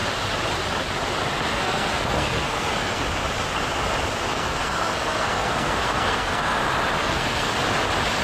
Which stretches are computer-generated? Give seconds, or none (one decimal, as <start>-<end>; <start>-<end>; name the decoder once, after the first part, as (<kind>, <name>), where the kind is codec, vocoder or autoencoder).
1.5-3.0 (codec, SNAC); 4.3-6.6; 7.0-7.5